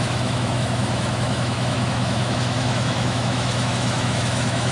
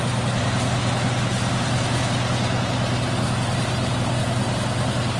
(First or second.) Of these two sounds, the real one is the second